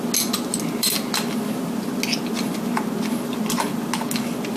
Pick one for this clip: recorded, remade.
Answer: recorded